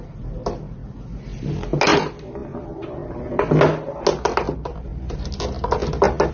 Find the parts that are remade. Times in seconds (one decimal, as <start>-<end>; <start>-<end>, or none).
none